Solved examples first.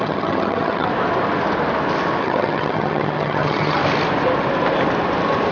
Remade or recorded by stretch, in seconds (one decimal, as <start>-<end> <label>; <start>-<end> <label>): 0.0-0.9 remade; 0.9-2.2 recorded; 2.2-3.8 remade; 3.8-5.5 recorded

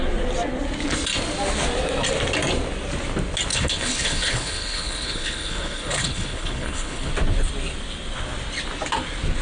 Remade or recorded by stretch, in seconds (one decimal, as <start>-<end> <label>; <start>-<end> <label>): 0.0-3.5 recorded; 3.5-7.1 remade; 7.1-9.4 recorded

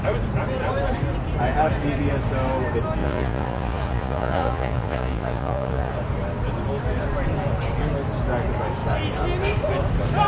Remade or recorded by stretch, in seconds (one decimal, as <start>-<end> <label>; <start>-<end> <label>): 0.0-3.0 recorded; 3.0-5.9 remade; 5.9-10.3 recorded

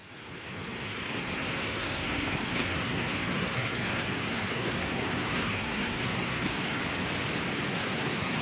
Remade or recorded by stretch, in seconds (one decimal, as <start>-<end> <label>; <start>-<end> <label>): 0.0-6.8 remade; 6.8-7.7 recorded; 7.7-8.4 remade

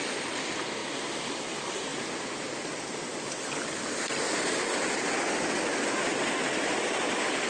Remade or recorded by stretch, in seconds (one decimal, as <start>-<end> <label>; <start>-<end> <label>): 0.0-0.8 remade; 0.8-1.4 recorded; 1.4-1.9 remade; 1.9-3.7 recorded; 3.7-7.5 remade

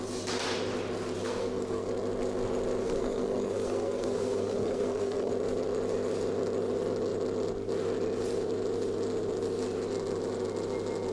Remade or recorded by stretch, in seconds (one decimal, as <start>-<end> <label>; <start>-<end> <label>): 0.0-1.2 recorded; 1.2-1.9 remade; 1.9-2.8 recorded; 2.8-5.3 remade; 5.3-11.1 recorded

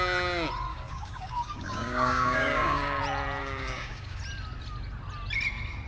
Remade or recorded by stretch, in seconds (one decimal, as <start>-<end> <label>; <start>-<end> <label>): 0.0-0.7 recorded; 0.7-3.0 remade; 3.0-3.4 recorded; 3.4-4.2 remade; 4.2-5.9 recorded